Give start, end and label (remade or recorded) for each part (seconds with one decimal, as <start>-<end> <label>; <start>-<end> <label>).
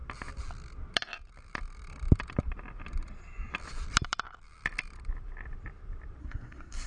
0.0-6.2 recorded; 6.2-6.9 remade